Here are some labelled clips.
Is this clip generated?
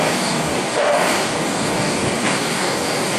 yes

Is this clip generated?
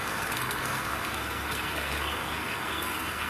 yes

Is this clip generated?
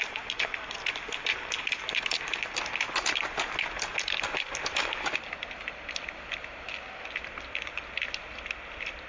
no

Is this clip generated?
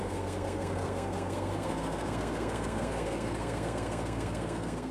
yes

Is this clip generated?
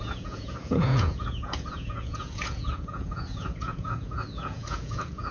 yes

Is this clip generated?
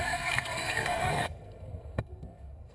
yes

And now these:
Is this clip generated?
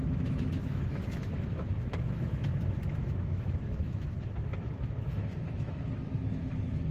yes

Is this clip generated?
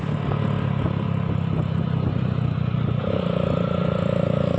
no